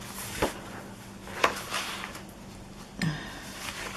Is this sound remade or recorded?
recorded